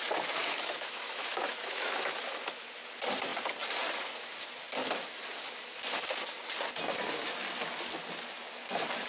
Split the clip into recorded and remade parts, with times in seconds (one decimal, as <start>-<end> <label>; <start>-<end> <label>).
0.0-0.4 recorded; 0.4-2.6 remade; 2.6-9.1 recorded